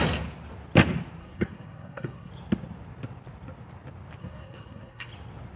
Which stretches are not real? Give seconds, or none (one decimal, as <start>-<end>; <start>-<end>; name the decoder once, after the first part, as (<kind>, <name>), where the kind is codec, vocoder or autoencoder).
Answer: 1.2-2.3 (codec, SNAC); 4.2-5.1